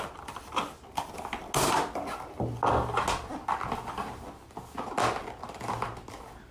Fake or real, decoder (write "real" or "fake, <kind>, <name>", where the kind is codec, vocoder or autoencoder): real